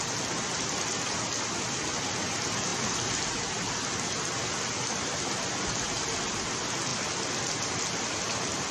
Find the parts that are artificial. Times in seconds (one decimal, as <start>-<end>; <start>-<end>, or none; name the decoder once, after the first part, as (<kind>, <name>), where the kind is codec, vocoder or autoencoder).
none